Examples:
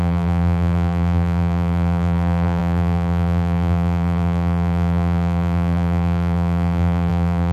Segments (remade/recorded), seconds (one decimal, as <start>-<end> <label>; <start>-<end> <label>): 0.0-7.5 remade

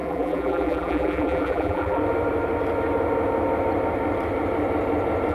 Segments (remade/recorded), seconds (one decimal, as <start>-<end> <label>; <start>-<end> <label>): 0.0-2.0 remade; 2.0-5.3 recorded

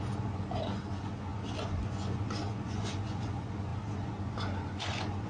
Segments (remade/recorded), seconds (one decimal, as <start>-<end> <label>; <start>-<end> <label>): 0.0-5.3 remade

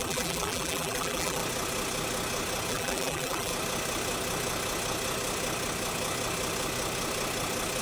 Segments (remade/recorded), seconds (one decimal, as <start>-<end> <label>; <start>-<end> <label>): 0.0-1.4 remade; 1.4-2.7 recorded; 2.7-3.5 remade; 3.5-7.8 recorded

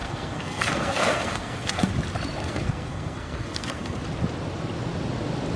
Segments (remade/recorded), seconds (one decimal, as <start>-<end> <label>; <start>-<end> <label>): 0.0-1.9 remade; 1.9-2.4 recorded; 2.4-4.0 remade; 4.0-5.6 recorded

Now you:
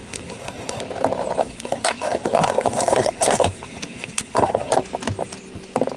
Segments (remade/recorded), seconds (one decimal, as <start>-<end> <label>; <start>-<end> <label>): 0.0-0.8 remade; 0.8-1.4 recorded; 1.4-4.7 remade; 4.7-6.0 recorded

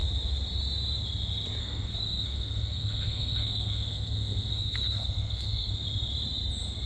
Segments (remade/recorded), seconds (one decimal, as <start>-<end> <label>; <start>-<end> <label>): 0.0-1.6 recorded; 1.6-5.7 remade; 5.7-6.9 recorded